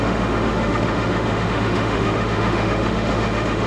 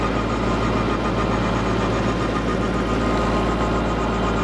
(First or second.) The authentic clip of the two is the second